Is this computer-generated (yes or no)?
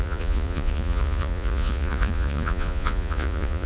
yes